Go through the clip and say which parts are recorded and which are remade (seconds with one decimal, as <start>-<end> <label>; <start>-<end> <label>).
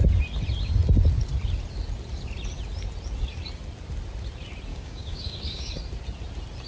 0.0-4.7 recorded; 4.7-5.7 remade; 5.7-6.7 recorded